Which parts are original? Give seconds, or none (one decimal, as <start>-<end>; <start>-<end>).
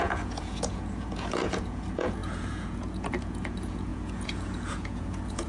none